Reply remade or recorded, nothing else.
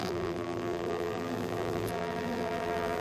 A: remade